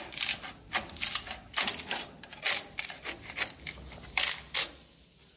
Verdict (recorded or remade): recorded